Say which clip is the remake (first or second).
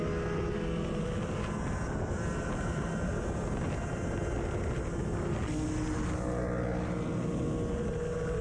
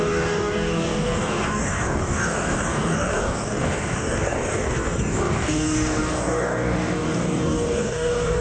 second